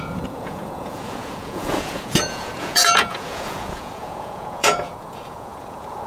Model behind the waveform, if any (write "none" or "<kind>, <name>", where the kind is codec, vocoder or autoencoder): vocoder, Vocos